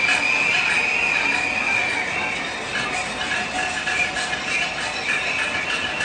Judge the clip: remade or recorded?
remade